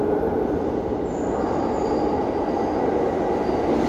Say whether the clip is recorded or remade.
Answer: recorded